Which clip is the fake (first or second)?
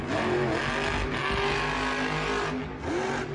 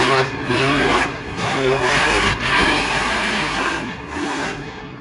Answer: second